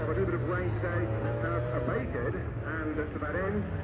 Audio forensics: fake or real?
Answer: real